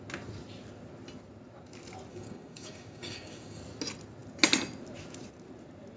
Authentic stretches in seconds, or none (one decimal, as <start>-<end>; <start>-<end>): 0.0-2.1; 3.6-6.0